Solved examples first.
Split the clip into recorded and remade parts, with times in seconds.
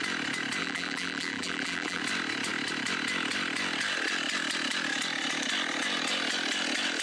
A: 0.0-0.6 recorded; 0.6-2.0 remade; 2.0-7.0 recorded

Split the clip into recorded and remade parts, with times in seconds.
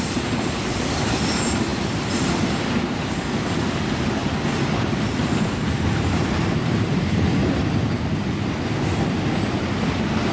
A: 0.0-1.7 recorded; 1.7-2.5 remade; 2.5-4.2 recorded; 4.2-7.7 remade; 7.7-10.3 recorded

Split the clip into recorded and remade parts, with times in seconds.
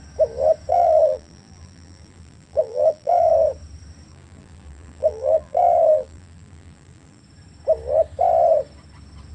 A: 0.0-0.7 recorded; 0.7-3.3 remade; 3.3-4.1 recorded; 4.1-7.2 remade; 7.2-9.3 recorded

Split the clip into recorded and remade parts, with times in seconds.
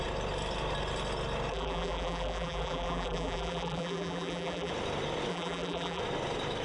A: 0.0-1.5 recorded; 1.5-4.7 remade; 4.7-5.3 recorded; 5.3-6.0 remade; 6.0-6.6 recorded